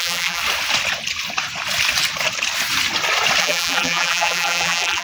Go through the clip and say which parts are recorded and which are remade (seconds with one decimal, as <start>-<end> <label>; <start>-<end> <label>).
0.0-0.4 remade; 0.4-3.4 recorded; 3.4-5.0 remade